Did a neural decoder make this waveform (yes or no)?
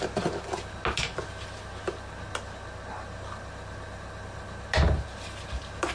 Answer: no